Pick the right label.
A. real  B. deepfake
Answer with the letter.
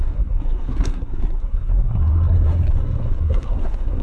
B